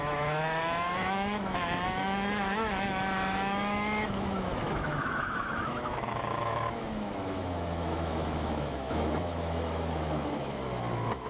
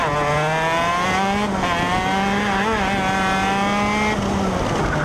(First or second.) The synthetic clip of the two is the first